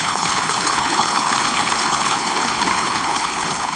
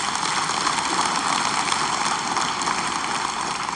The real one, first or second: second